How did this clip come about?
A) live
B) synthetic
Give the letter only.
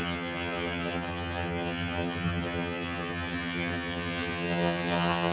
B